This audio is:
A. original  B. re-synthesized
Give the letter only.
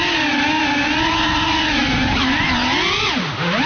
A